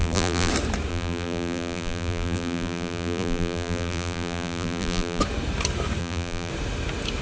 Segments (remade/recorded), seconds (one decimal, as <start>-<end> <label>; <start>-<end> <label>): 0.0-0.5 remade; 0.5-0.9 recorded; 0.9-5.2 remade; 5.2-6.0 recorded; 6.0-6.5 remade; 6.5-7.2 recorded